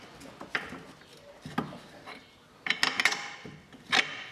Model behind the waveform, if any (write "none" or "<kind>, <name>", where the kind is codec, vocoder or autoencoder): none